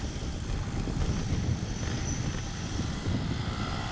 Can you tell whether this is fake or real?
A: real